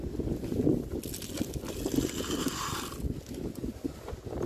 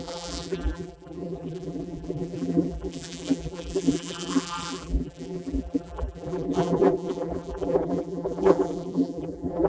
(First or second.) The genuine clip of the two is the first